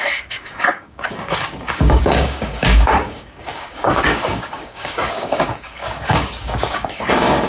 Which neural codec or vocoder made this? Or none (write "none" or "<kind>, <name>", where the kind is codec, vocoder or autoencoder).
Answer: codec, DAC